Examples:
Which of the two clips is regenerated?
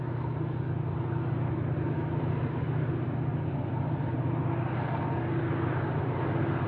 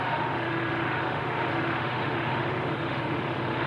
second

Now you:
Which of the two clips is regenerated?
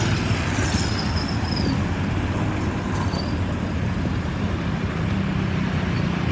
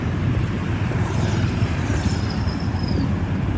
second